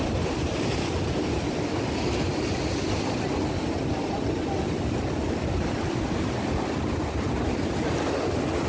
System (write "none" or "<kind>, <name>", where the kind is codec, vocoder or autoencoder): none